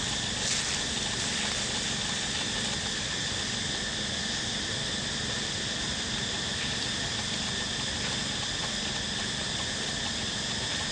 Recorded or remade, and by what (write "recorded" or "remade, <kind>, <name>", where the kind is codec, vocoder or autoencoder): recorded